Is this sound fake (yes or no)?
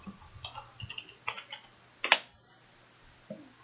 no